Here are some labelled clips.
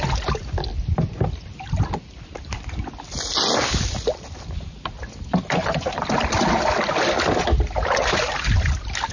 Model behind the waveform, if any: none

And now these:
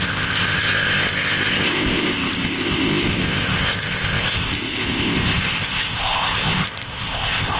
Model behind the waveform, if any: codec, ZipCodec